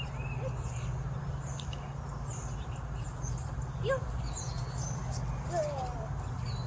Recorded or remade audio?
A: recorded